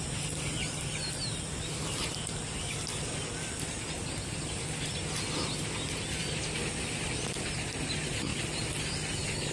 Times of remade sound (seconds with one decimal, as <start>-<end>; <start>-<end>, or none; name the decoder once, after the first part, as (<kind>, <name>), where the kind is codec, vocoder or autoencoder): none